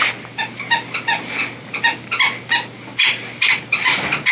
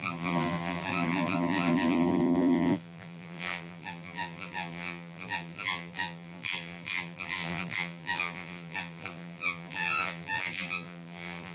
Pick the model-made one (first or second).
second